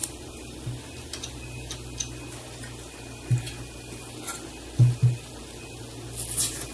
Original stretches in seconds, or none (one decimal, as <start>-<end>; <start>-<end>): 0.0-6.7